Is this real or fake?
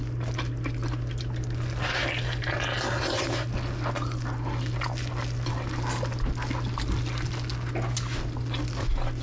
real